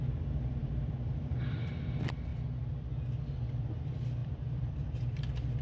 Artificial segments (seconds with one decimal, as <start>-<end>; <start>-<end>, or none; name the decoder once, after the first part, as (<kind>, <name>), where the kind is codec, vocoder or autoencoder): 0.0-2.3 (vocoder, BigVGAN v2); 3.2-5.6

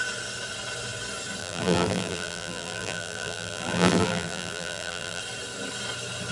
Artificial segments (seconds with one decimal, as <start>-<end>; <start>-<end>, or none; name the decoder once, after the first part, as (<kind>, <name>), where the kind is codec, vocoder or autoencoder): 1.4-5.2 (vocoder, BigVGAN v2)

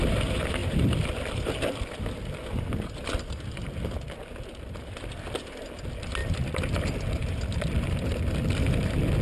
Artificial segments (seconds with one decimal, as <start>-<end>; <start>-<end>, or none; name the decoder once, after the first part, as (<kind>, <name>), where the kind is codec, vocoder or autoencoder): 0.6-2.0 (vocoder, BigVGAN v2); 6.2-7.8

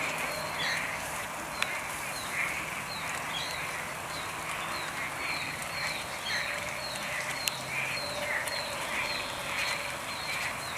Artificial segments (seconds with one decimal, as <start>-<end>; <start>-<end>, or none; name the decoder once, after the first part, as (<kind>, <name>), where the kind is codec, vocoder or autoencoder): none

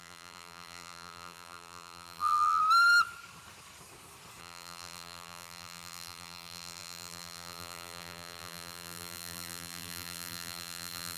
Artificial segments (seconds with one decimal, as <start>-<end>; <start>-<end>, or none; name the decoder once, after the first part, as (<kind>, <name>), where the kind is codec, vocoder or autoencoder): 0.0-2.6 (vocoder, BigVGAN v2); 4.4-11.2

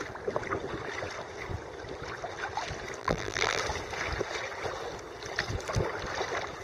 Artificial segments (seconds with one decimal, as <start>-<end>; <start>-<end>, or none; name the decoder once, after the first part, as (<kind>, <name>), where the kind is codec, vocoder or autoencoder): 3.0-3.6 (vocoder, BigVGAN v2)

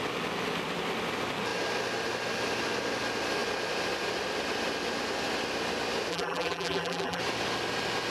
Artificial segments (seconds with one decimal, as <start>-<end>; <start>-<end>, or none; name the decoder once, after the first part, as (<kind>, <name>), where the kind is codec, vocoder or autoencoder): 6.1-7.2 (vocoder, BigVGAN v2)

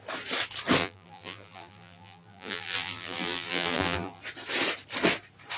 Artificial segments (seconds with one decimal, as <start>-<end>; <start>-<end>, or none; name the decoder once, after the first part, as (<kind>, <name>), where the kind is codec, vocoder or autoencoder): 0.8-4.2 (vocoder, BigVGAN v2)